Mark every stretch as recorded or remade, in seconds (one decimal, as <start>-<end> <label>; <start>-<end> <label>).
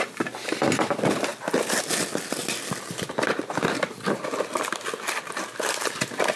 0.0-6.4 recorded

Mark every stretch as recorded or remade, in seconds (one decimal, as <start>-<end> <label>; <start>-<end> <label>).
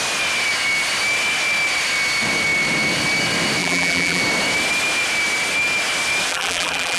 0.0-3.6 recorded; 3.6-4.2 remade; 4.2-6.3 recorded; 6.3-7.0 remade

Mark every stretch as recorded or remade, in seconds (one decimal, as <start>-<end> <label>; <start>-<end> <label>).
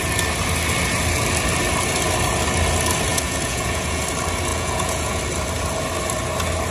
0.0-3.1 recorded; 3.1-4.0 remade; 4.0-4.5 recorded; 4.5-5.2 remade; 5.2-6.7 recorded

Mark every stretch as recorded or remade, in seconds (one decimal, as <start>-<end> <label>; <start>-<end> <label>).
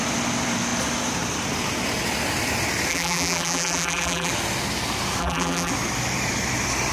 0.0-2.9 recorded; 2.9-4.3 remade; 4.3-5.2 recorded; 5.2-5.7 remade; 5.7-6.9 recorded